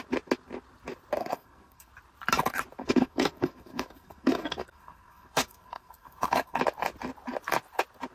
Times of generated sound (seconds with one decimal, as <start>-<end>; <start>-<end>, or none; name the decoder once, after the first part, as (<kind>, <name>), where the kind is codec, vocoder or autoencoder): 1.2-1.9 (codec, SNAC); 2.8-6.6